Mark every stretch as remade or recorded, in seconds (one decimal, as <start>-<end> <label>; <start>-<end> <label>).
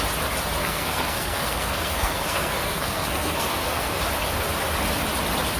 0.0-0.6 recorded; 0.6-4.0 remade; 4.0-5.6 recorded